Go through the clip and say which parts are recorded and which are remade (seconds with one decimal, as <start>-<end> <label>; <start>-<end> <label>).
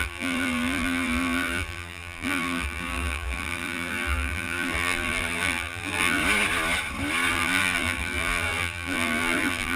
0.0-6.2 remade; 6.2-7.3 recorded; 7.3-9.8 remade